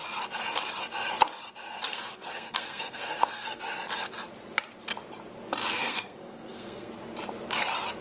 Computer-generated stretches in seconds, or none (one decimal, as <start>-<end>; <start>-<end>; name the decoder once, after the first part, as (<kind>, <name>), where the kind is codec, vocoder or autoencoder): 1.9-3.6 (codec, SNAC); 5.6-6.9